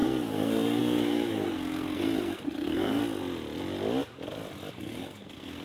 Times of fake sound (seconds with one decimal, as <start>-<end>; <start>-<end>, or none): 0.0-3.0; 4.7-5.6